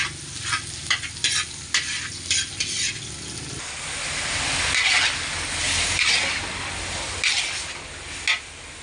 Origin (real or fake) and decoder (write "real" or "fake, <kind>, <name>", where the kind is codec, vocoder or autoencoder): real